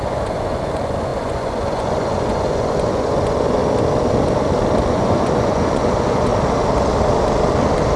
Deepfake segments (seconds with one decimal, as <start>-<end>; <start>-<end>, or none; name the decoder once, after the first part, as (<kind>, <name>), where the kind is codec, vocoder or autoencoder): 0.0-3.6 (vocoder, Vocos); 4.9-6.3